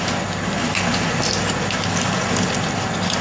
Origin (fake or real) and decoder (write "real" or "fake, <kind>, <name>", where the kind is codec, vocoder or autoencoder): real